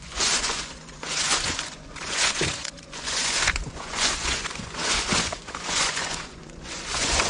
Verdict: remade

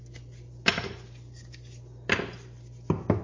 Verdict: recorded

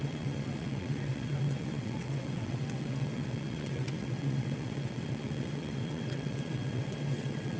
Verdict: remade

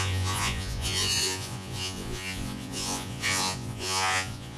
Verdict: remade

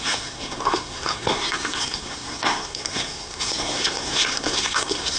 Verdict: remade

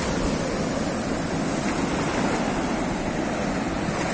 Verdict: recorded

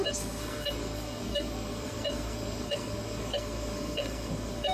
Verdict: remade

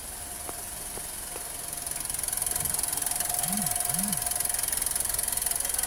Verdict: recorded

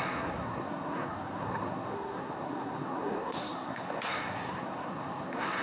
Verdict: remade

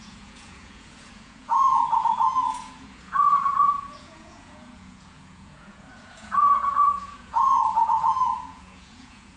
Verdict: remade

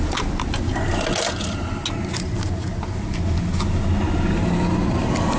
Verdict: recorded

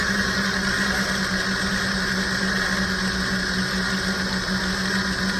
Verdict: recorded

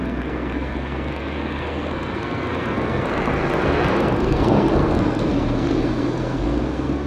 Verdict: remade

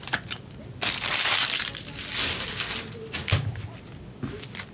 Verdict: recorded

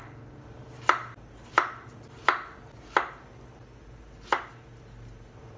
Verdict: recorded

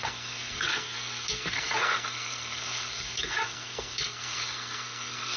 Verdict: remade